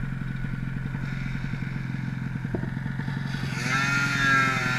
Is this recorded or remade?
recorded